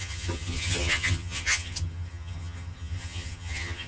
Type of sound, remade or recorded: remade